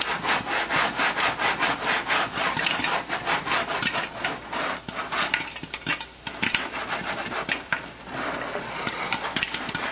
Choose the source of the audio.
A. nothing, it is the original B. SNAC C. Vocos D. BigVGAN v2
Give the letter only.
A